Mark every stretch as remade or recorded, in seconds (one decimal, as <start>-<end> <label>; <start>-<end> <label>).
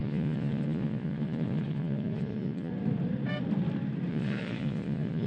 0.0-2.7 remade; 2.7-4.1 recorded; 4.1-5.3 remade